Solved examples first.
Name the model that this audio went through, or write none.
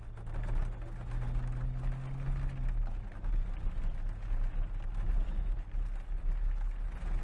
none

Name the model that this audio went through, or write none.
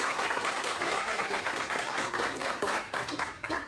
codec, SNAC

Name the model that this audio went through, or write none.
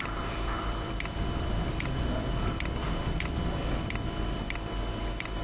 vocoder, BigVGAN v2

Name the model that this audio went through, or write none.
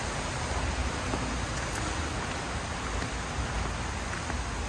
none